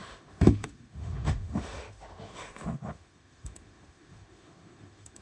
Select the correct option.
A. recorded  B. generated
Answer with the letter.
B